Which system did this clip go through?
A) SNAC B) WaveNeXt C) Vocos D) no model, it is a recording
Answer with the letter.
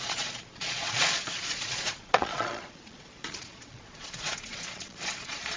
C